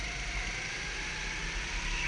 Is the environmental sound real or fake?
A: real